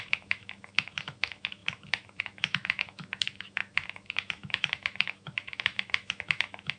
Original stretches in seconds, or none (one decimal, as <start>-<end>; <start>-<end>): none